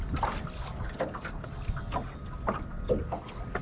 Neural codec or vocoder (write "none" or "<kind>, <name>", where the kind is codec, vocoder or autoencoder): none